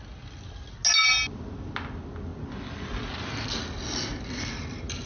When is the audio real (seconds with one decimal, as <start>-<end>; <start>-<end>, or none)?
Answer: 0.0-5.1